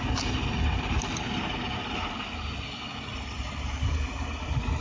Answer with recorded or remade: recorded